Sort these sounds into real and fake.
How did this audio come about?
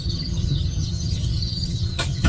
fake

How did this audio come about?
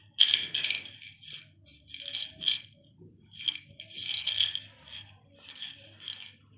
real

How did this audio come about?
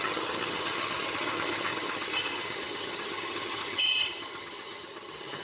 fake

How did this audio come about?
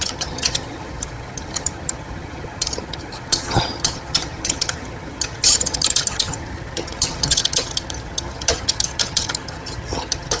fake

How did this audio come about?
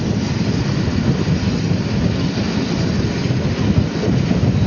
real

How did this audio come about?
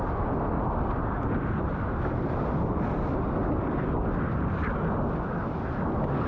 real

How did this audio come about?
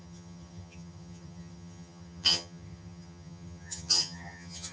fake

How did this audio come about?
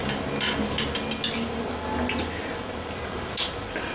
real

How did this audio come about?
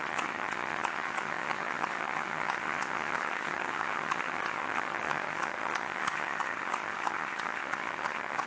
fake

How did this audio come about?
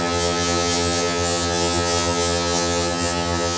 fake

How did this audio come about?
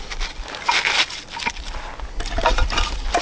real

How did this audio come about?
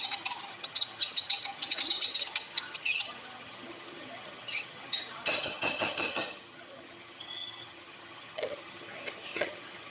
fake